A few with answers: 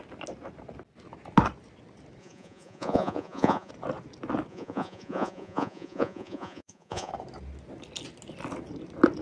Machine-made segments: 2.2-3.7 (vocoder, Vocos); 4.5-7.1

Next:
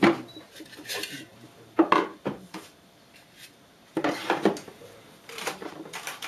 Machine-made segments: 0.0-6.3 (vocoder, BigVGAN v2)